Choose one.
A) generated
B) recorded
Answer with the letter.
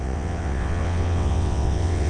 A